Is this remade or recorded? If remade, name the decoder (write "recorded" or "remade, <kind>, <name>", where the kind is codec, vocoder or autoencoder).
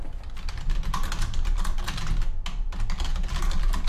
recorded